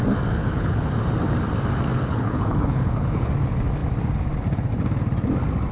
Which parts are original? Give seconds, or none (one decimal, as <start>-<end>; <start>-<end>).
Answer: 0.0-0.4; 0.9-1.9; 3.3-5.7